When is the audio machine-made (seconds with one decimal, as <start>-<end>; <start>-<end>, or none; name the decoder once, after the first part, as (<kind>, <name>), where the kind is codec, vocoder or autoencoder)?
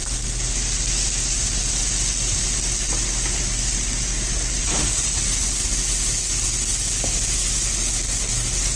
none